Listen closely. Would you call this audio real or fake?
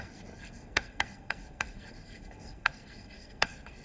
fake